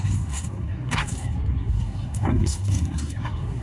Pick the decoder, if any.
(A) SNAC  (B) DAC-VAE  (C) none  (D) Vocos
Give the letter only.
A